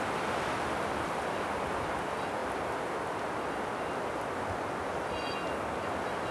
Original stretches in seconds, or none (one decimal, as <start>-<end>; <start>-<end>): 0.0-6.3